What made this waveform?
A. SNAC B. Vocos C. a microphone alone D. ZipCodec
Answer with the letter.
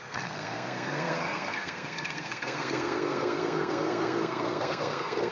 A